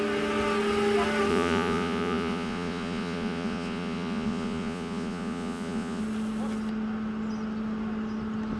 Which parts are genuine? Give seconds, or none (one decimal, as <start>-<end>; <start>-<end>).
0.0-1.3; 6.0-8.6